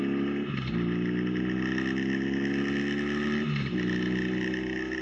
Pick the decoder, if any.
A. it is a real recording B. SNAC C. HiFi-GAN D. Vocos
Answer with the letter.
A